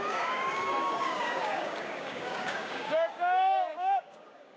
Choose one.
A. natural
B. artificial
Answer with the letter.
B